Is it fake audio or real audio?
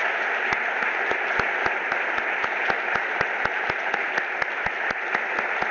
real